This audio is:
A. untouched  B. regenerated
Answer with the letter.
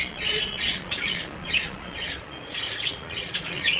B